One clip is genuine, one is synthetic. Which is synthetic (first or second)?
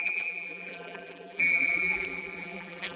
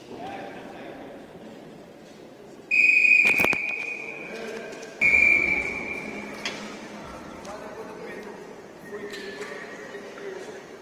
first